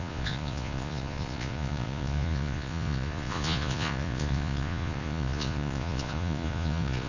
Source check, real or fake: fake